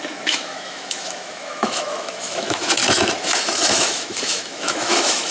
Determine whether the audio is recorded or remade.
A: remade